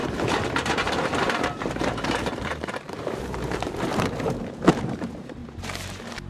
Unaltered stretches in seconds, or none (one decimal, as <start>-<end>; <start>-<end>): 5.4-6.3